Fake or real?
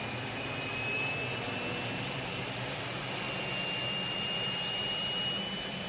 real